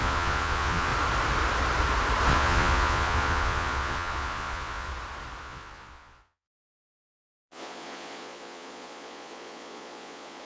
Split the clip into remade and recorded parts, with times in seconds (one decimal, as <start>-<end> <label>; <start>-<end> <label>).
0.0-0.9 remade; 0.9-2.3 recorded; 2.3-4.9 remade; 4.9-5.4 recorded; 5.4-10.4 remade